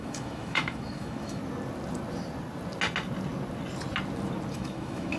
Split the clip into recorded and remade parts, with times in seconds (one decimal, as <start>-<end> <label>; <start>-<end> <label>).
0.0-1.4 remade; 1.4-4.5 recorded; 4.5-5.2 remade